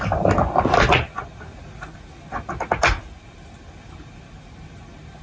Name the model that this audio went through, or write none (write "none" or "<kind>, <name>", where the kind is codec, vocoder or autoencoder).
none